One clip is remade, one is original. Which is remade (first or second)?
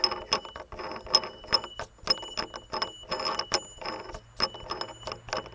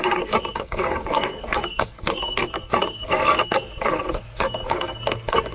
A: second